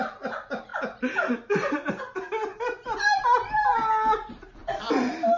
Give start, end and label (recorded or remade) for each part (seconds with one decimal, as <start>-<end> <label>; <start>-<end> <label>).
0.0-5.4 recorded